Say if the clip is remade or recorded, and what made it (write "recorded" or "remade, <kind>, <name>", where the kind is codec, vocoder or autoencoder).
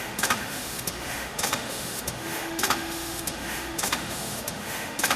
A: remade, autoencoder, DAC-VAE